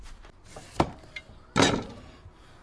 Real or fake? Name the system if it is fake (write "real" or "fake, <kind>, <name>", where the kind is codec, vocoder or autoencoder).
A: real